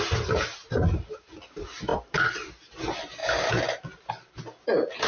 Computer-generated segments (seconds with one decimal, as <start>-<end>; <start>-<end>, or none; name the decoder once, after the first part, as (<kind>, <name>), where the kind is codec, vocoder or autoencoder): 1.9-2.5 (vocoder, BigVGAN v2)